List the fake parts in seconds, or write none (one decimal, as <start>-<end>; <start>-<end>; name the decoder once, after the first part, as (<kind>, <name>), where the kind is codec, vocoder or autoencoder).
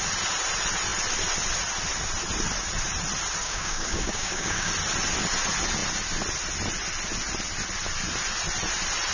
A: 3.4-4.7 (codec, DAC)